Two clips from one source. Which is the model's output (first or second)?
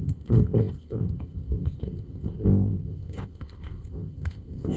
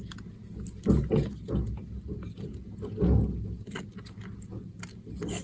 first